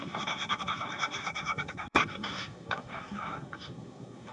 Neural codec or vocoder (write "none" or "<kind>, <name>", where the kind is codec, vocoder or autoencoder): codec, SNAC